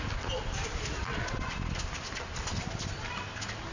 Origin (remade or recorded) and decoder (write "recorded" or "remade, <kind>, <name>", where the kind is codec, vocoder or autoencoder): recorded